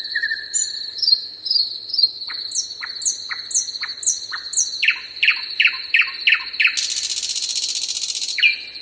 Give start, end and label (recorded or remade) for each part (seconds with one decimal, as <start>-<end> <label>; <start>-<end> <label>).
0.0-8.8 recorded